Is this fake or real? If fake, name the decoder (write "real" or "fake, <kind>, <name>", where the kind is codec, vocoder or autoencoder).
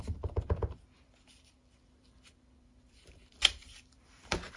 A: fake, vocoder, BigVGAN v2